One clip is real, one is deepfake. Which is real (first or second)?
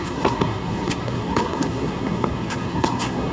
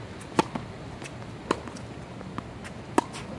second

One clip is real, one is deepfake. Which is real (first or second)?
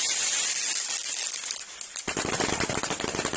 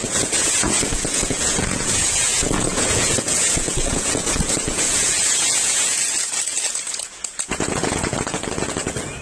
first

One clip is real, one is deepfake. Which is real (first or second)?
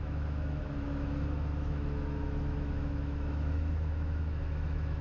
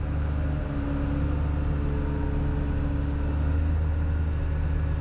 second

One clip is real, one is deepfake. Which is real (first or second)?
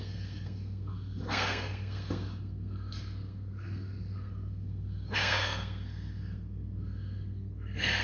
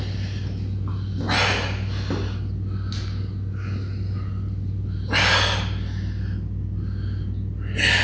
second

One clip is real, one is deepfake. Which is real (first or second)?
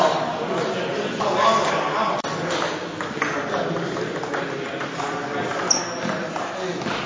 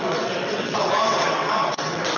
first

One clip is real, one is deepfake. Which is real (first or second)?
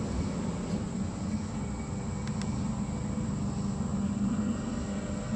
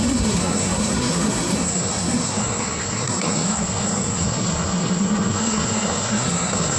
first